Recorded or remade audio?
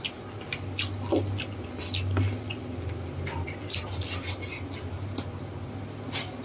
recorded